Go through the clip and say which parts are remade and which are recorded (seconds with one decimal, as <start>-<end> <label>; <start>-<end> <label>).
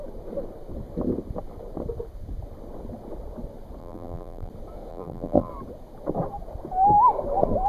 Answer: 0.0-3.8 recorded; 3.8-4.5 remade; 4.5-4.9 recorded; 4.9-5.5 remade; 5.5-7.7 recorded